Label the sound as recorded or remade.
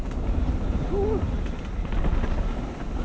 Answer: recorded